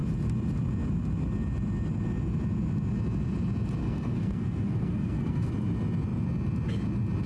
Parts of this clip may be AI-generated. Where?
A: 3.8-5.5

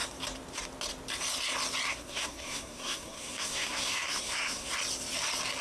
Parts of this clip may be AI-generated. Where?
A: 1.9-4.7

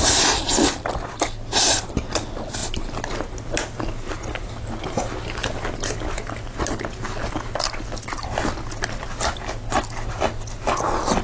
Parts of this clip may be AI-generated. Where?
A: none

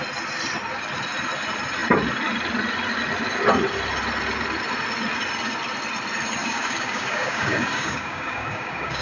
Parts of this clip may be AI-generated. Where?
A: 6.4-9.0